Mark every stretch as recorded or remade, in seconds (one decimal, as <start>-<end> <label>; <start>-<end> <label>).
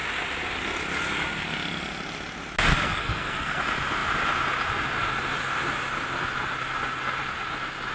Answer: 0.0-2.7 recorded; 2.7-3.6 remade; 3.6-7.9 recorded